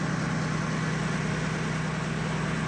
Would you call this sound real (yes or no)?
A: yes